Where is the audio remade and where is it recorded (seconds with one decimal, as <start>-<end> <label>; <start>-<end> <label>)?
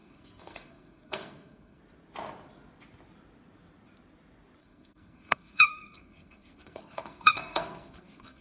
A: 0.0-1.8 remade; 1.8-4.6 recorded; 4.6-8.4 remade